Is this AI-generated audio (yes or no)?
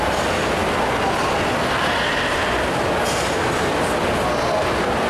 no